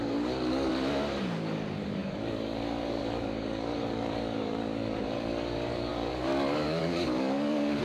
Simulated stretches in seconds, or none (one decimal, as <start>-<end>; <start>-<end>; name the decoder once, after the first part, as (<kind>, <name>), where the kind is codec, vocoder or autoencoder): 0.0-0.7 (codec, DAC); 1.2-7.8